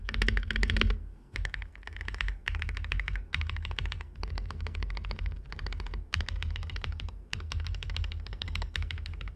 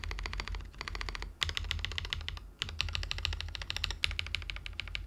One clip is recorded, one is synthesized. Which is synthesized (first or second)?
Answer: first